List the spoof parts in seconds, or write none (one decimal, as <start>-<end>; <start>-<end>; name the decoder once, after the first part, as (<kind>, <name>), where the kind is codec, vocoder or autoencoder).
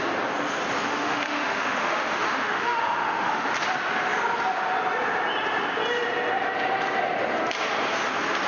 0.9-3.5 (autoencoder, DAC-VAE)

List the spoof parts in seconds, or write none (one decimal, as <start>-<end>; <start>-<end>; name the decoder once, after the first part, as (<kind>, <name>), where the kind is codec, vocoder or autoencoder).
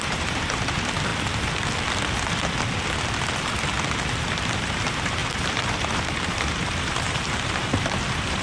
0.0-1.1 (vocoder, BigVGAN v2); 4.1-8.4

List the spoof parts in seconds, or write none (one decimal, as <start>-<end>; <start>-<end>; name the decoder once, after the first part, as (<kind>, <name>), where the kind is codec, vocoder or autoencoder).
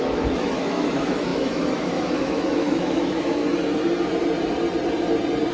0.0-3.4 (autoencoder, DAC-VAE)